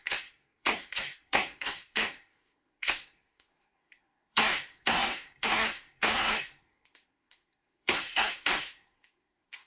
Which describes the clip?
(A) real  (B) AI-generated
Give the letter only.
B